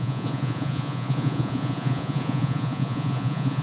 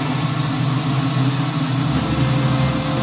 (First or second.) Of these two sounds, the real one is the second